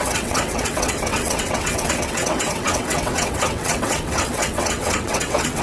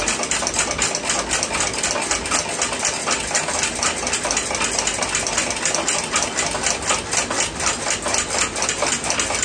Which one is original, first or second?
second